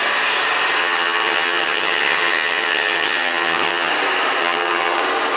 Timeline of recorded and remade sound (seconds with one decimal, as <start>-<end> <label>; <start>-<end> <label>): 0.0-0.8 recorded; 0.8-3.9 remade; 3.9-4.4 recorded; 4.4-5.0 remade; 5.0-5.4 recorded